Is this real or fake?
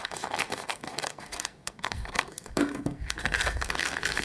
fake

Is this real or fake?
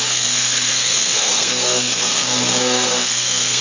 fake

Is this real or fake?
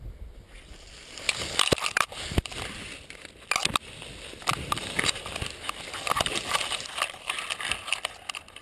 real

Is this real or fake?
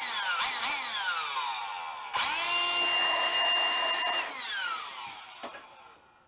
real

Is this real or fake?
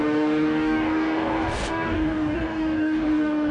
fake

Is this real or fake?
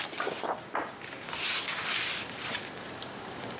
fake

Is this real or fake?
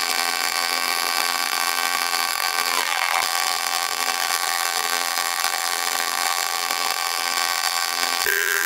fake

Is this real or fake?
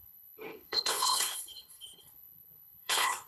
fake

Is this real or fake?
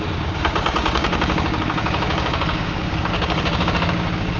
fake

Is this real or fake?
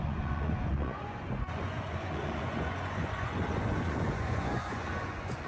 fake